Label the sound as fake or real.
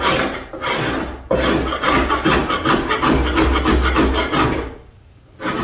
real